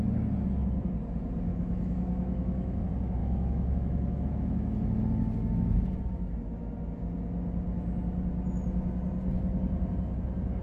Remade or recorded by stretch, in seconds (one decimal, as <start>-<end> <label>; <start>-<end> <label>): 0.0-1.5 recorded; 1.5-2.8 remade; 2.8-3.2 recorded; 3.2-5.0 remade; 5.0-10.6 recorded